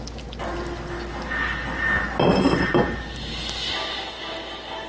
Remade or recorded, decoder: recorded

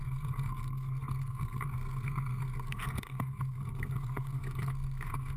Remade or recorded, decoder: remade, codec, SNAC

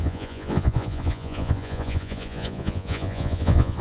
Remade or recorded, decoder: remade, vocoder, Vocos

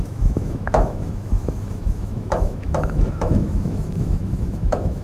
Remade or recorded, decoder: remade, autoencoder, DAC-VAE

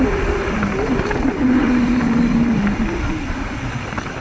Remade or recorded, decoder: remade, vocoder, BigVGAN v2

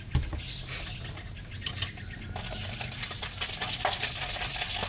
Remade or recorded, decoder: recorded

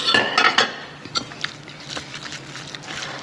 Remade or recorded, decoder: recorded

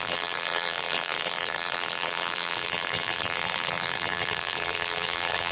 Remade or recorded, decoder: remade, vocoder, BigVGAN v2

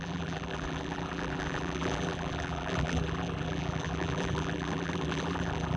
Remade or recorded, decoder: remade, vocoder, BigVGAN v2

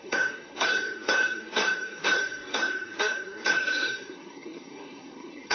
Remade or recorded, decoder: remade, codec, SNAC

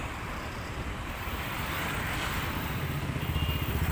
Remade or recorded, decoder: remade, vocoder, BigVGAN v2